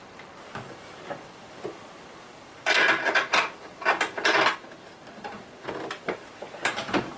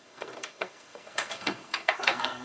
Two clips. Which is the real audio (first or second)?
first